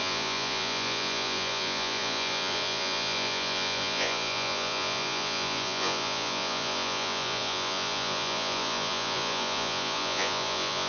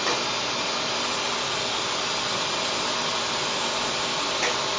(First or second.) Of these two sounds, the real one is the second